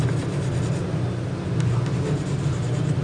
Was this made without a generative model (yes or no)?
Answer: yes